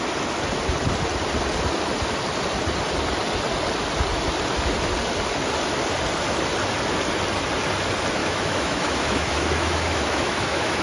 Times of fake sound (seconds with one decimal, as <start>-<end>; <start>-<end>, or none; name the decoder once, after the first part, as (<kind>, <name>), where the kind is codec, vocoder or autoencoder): 8.2-10.8 (autoencoder, DAC-VAE)